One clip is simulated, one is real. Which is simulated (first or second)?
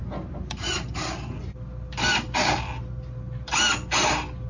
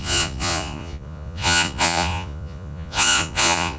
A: second